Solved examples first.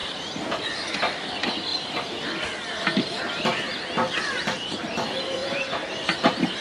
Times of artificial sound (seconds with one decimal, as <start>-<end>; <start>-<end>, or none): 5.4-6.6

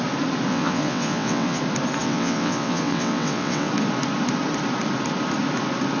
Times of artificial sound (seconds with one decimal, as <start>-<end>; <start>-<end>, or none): 0.5-1.6; 2.0-3.7

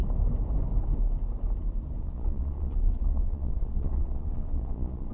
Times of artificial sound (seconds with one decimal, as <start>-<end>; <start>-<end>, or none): 2.0-5.1

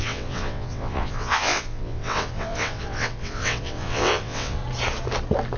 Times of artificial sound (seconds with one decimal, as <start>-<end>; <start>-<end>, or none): 0.0-4.6

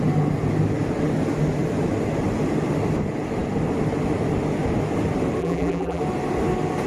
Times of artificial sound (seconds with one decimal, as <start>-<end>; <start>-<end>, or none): 5.4-6.0

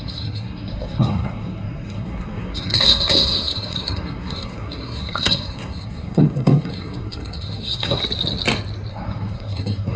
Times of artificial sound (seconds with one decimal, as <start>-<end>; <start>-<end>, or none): 0.0-8.0; 8.9-10.0

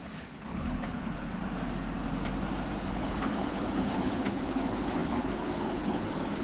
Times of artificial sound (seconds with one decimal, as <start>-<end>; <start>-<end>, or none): 0.0-1.4; 2.9-6.4